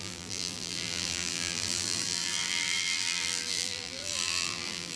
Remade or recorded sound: remade